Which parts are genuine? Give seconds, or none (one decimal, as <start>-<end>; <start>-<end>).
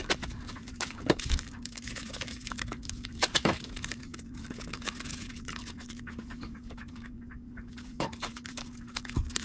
none